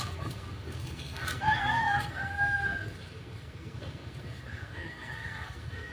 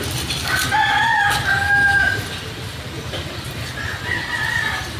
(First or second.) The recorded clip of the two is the second